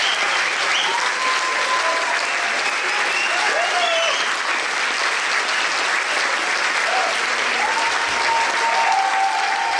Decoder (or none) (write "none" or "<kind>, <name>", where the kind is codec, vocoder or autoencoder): none